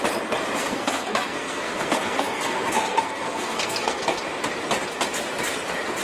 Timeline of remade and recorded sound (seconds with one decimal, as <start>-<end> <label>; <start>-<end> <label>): 0.0-0.6 recorded; 0.6-4.2 remade; 4.2-6.0 recorded